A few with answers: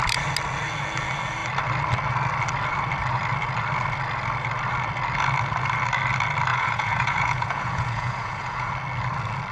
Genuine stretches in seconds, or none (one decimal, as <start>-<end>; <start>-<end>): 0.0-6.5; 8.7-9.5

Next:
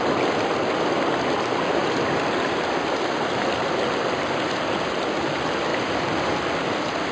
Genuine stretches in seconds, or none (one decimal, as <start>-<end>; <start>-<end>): 0.0-7.1

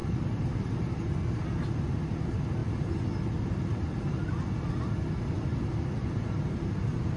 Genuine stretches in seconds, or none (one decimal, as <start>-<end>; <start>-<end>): 0.7-7.2

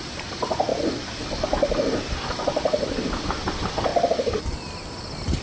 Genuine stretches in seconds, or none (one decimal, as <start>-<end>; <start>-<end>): 0.0-5.4